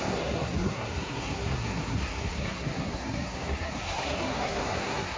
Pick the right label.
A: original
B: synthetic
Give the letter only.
B